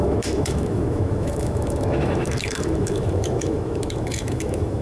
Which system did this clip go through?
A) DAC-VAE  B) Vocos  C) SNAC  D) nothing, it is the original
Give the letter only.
A